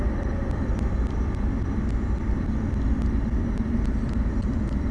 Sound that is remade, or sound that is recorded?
recorded